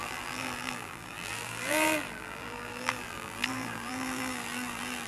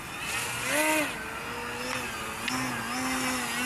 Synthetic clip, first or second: first